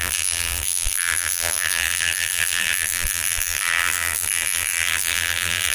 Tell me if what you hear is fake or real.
fake